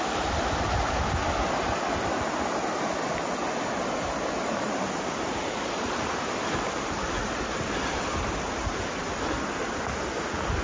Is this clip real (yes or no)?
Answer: yes